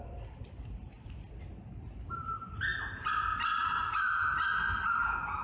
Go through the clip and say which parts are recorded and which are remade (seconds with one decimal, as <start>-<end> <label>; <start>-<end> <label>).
0.0-5.4 recorded